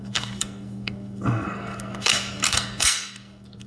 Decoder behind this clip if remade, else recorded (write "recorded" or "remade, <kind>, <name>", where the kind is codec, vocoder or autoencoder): remade, codec, SNAC